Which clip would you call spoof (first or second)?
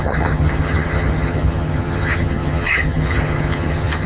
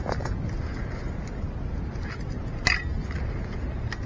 first